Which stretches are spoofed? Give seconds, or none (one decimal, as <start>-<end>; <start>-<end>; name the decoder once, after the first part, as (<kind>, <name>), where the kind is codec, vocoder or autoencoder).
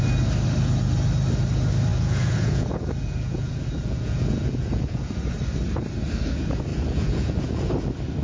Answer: 1.9-5.1 (vocoder, Vocos); 6.7-7.7